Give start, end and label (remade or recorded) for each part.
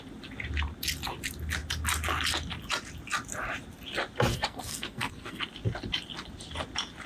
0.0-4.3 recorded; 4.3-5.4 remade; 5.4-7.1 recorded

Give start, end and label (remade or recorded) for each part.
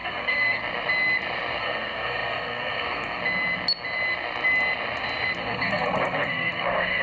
0.0-0.6 remade; 0.6-1.6 recorded; 1.6-3.2 remade; 3.2-5.4 recorded; 5.4-7.0 remade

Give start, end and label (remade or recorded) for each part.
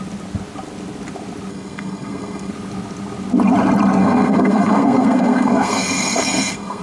0.0-1.5 recorded; 1.5-2.5 remade; 2.5-4.0 recorded; 4.0-6.8 remade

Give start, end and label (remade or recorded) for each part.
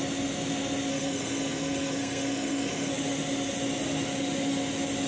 0.0-0.9 recorded; 0.9-2.9 remade; 2.9-5.1 recorded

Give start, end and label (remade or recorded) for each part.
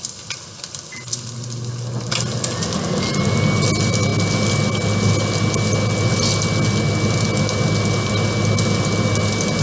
0.0-9.6 recorded